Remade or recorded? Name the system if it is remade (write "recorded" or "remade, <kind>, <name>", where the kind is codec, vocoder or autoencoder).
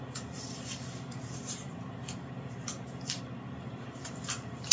remade, vocoder, BigVGAN v2